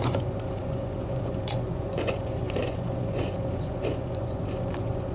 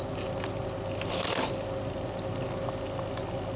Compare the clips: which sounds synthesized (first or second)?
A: first